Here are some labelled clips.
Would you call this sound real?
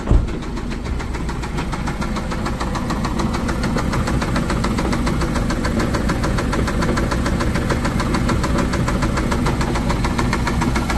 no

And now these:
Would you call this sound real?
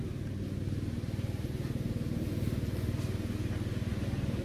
yes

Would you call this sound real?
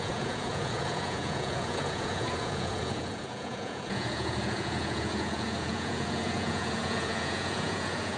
no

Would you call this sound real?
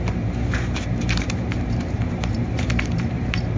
no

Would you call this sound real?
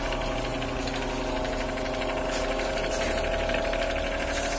yes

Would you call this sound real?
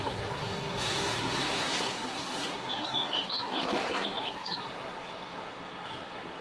no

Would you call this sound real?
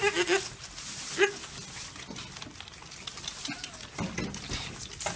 yes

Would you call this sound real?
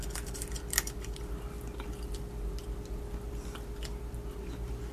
yes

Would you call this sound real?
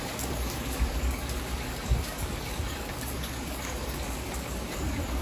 no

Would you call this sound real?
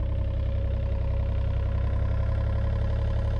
yes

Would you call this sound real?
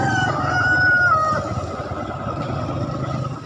yes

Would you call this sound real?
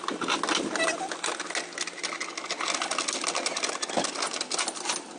yes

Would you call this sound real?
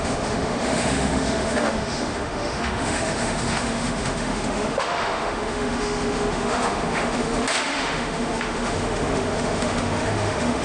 no